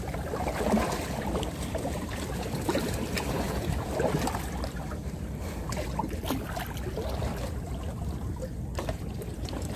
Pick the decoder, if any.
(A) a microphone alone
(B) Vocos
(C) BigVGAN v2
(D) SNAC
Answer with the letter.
C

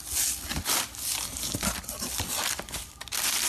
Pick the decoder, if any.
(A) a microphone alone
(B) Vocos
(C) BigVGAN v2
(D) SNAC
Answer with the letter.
A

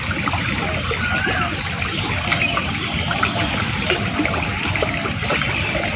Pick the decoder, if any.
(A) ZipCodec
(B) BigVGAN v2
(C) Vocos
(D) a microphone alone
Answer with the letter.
B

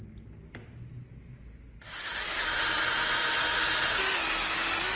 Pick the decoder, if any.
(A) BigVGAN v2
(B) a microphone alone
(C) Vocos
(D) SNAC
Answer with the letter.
B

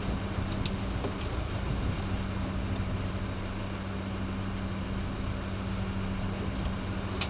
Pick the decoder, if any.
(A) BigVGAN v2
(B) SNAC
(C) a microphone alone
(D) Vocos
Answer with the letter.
C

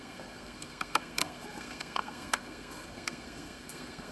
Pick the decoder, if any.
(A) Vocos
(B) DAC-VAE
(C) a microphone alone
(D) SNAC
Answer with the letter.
D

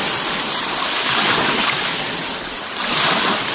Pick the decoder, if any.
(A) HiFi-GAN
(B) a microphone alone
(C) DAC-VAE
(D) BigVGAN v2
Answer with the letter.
D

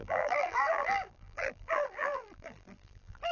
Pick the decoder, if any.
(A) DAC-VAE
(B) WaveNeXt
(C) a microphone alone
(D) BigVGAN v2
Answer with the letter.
D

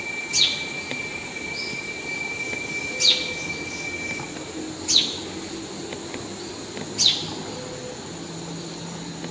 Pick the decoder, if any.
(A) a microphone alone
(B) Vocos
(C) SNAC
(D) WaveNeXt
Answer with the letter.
A